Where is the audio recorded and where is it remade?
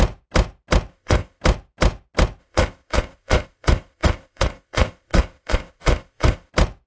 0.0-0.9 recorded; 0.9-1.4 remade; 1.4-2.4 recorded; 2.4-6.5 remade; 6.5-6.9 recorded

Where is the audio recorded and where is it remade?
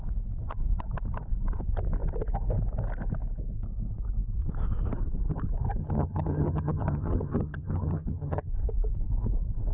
0.0-5.8 recorded; 5.8-8.5 remade; 8.5-9.7 recorded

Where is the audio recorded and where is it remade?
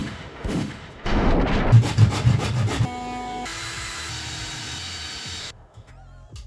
0.0-1.3 remade; 1.3-5.4 recorded; 5.4-5.9 remade; 5.9-6.5 recorded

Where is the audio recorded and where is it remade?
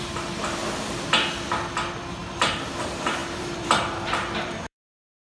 0.0-0.6 remade; 0.6-2.1 recorded; 2.1-5.4 remade